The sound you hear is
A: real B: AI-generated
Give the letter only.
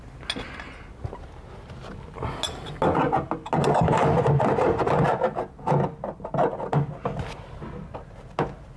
A